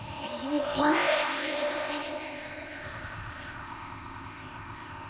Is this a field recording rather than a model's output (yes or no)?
no